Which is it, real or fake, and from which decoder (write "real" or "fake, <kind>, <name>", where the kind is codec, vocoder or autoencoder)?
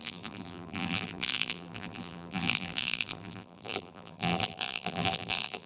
fake, vocoder, BigVGAN v2